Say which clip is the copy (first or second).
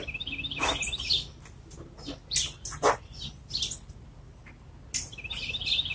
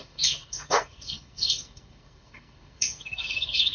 second